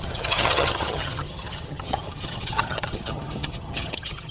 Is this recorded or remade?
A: remade